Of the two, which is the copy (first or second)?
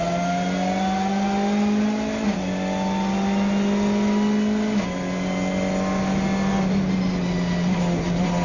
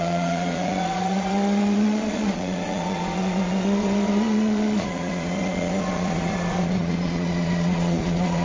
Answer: second